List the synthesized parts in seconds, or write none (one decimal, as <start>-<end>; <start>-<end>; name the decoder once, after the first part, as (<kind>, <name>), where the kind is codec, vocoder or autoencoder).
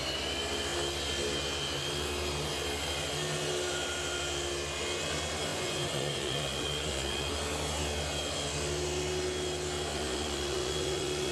5.5-7.3 (vocoder, Vocos); 9.9-11.3